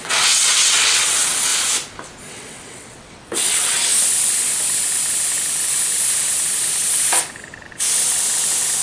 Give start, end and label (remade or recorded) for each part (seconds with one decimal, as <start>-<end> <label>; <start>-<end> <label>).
0.0-1.5 remade; 1.5-2.3 recorded; 2.3-3.9 remade; 3.9-8.8 recorded